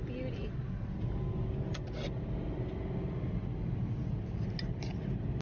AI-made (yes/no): no